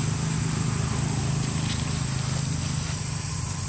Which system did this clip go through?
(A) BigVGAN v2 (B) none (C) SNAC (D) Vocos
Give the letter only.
B